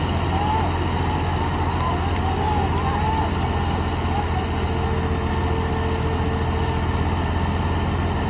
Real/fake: real